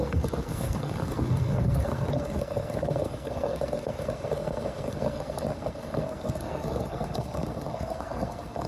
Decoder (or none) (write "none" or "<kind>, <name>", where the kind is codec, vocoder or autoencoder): codec, SNAC